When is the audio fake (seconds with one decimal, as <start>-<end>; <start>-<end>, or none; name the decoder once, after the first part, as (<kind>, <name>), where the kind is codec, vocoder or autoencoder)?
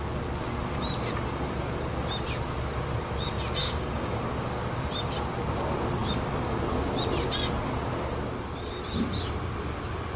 3.6-4.2 (codec, DAC)